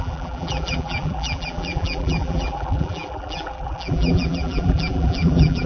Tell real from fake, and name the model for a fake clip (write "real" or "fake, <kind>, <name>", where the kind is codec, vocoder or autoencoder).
fake, vocoder, BigVGAN v2